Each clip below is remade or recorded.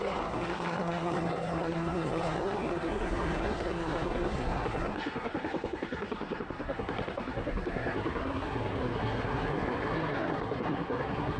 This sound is remade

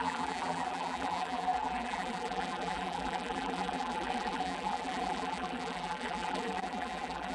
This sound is remade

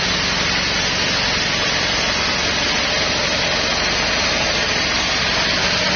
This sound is recorded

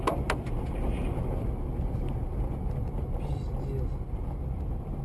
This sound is recorded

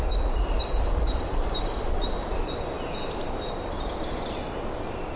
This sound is recorded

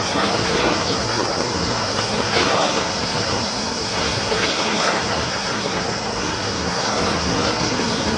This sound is remade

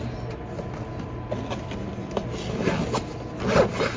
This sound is recorded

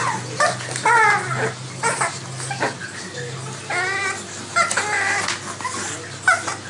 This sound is recorded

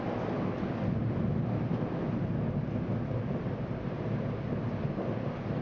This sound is recorded